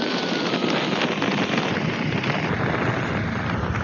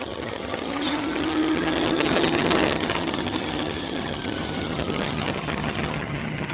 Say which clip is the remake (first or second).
second